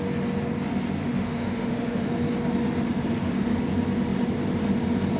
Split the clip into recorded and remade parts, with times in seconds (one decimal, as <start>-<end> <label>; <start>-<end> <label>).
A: 0.0-1.0 recorded; 1.0-2.1 remade; 2.1-3.1 recorded; 3.1-3.6 remade; 3.6-5.2 recorded